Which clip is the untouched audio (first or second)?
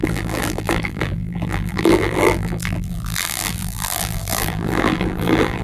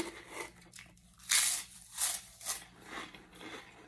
second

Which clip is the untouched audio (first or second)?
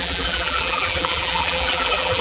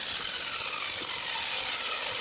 second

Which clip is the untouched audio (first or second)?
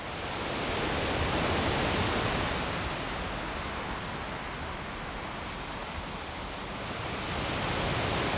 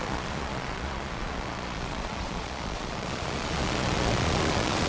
first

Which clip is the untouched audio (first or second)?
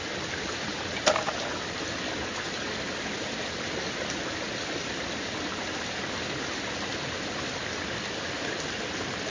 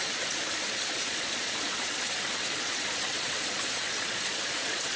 first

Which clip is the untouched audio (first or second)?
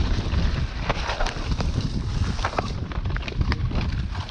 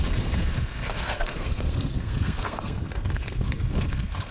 first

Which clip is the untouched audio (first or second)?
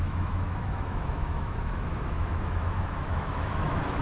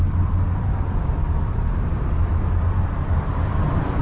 second